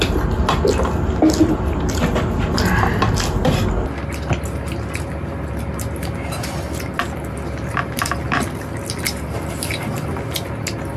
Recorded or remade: recorded